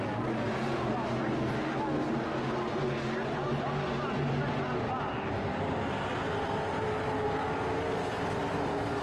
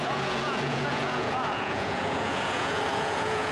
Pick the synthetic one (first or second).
second